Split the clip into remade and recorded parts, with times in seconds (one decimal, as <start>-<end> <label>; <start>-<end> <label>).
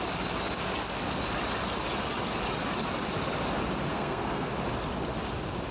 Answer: 0.0-3.9 recorded; 3.9-4.5 remade; 4.5-5.7 recorded